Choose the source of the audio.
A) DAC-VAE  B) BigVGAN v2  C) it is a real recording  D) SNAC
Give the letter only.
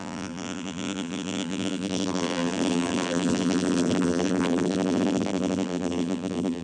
B